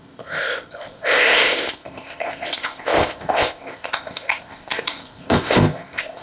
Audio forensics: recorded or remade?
remade